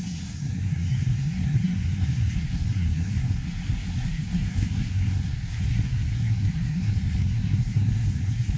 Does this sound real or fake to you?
fake